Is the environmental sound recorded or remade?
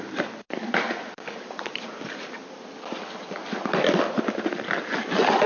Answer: recorded